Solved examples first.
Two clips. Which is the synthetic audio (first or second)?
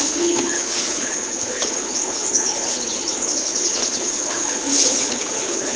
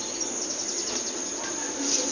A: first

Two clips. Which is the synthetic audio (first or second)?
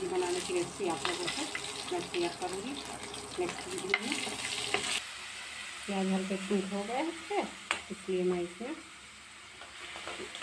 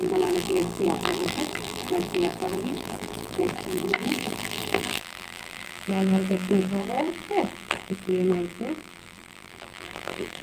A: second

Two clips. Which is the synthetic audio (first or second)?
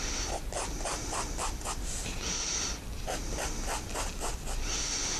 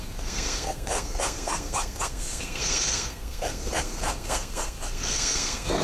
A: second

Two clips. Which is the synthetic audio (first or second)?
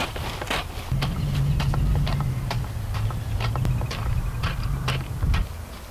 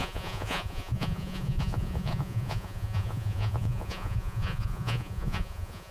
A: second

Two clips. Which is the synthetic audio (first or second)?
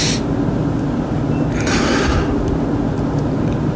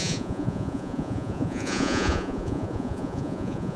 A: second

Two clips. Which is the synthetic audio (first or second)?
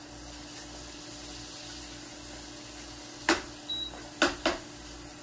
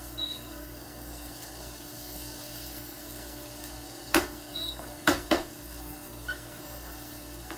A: second